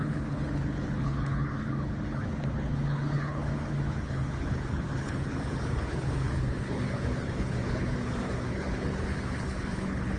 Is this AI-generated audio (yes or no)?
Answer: yes